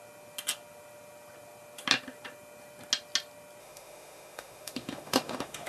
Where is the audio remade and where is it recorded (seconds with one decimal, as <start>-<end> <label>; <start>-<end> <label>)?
0.0-3.6 recorded; 3.6-5.7 remade